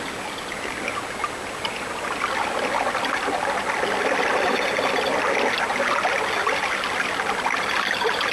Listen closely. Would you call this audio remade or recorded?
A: recorded